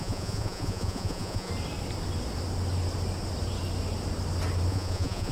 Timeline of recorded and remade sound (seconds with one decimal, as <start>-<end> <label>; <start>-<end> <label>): 0.0-1.5 remade; 1.5-4.7 recorded; 4.7-5.3 remade

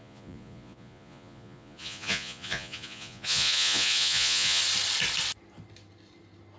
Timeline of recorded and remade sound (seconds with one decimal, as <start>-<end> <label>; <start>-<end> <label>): 0.0-4.6 remade; 4.6-6.6 recorded

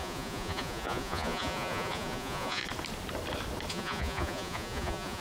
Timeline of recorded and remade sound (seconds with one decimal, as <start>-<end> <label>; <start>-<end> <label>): 0.0-2.6 remade; 2.6-3.7 recorded; 3.7-5.2 remade

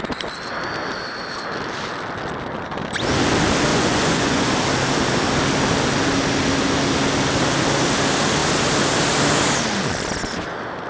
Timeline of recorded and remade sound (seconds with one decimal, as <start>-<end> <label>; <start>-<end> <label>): 0.0-3.7 recorded; 3.7-4.5 remade; 4.5-10.9 recorded

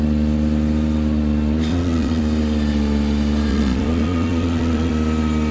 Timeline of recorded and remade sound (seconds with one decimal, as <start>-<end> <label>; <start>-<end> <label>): 0.0-1.7 recorded; 1.7-2.2 remade; 2.2-3.5 recorded; 3.5-4.9 remade; 4.9-5.5 recorded

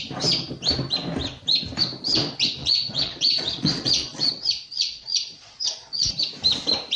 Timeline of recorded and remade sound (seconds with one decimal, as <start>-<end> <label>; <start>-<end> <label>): 0.0-2.6 recorded; 2.6-6.2 remade; 6.2-7.0 recorded

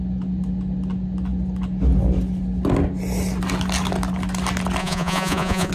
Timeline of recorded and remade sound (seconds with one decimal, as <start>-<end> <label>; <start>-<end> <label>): 0.0-4.8 recorded; 4.8-5.7 remade